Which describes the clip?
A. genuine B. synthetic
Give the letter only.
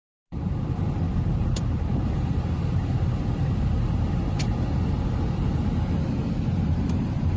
A